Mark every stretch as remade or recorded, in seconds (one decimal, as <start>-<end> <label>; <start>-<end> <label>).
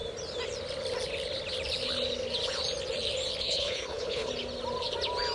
0.0-3.4 recorded; 3.4-4.3 remade; 4.3-5.3 recorded